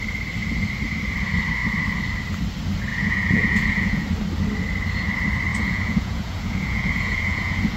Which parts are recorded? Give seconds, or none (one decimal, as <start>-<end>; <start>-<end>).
0.0-2.9; 4.1-5.5